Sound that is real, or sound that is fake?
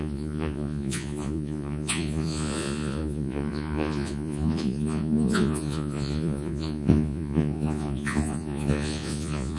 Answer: fake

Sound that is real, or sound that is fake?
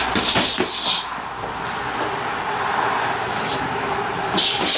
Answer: real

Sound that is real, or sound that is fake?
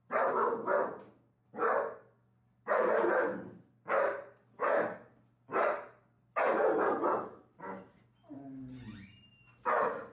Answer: real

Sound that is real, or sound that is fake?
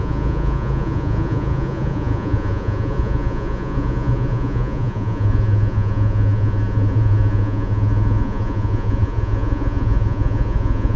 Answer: fake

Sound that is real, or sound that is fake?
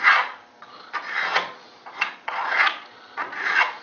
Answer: fake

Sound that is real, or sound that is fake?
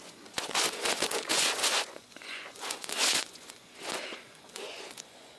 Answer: fake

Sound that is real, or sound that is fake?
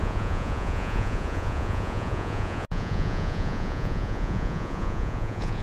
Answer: fake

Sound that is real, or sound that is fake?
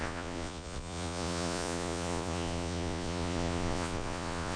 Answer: fake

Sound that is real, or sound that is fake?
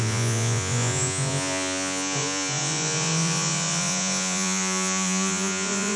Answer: fake